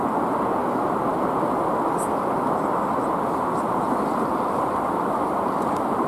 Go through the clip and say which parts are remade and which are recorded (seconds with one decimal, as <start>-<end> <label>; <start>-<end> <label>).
0.0-0.6 remade; 0.6-4.3 recorded; 4.3-6.1 remade

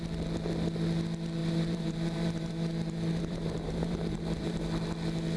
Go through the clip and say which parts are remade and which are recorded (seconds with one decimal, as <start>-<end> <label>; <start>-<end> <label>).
0.0-1.4 recorded; 1.4-4.6 remade; 4.6-5.4 recorded

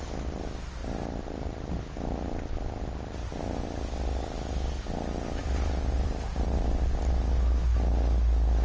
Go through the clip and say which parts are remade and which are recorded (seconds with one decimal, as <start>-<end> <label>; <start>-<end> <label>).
0.0-0.8 recorded; 0.8-1.7 remade; 1.7-5.4 recorded; 5.4-6.3 remade; 6.3-8.6 recorded

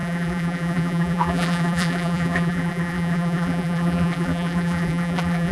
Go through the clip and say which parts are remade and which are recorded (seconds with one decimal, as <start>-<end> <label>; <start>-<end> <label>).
0.0-5.5 remade

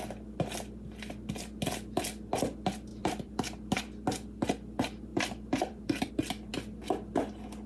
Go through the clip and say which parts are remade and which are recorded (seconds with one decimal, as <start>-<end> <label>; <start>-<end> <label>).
0.0-2.9 recorded; 2.9-3.6 remade; 3.6-5.1 recorded; 5.1-6.1 remade; 6.1-7.7 recorded